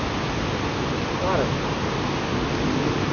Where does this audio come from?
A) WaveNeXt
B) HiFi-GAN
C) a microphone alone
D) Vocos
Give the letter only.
C